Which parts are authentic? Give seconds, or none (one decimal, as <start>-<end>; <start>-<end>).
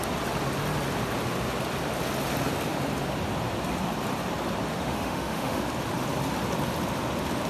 0.0-4.7; 5.6-7.5